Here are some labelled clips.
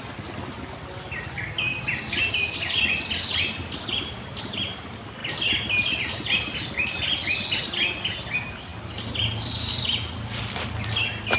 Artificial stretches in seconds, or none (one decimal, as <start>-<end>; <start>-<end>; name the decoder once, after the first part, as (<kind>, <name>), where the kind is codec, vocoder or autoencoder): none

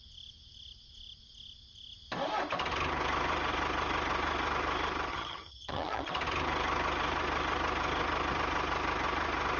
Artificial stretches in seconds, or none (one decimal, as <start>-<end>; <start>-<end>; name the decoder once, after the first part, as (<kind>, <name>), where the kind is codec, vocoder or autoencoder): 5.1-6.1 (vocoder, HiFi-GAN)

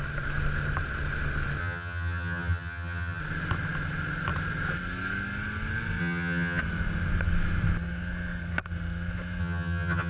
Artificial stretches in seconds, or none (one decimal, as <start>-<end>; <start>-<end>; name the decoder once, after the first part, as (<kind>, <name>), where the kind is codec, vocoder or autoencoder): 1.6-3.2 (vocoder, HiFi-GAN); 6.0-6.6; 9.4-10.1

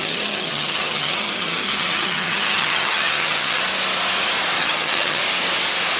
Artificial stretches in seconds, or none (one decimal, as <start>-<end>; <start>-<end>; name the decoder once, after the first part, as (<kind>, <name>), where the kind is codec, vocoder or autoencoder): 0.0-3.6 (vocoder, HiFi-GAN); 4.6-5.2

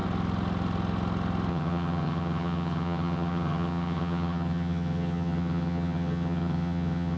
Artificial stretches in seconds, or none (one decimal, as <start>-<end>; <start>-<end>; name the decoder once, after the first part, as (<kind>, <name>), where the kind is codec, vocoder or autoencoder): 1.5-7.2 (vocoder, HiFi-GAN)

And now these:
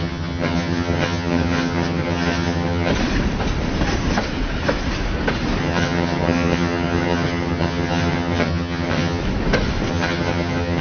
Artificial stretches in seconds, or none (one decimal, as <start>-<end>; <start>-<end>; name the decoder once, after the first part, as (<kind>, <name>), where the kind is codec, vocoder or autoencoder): 0.0-2.9 (vocoder, HiFi-GAN); 5.6-9.2; 9.9-10.8